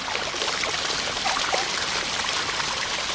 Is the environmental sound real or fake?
real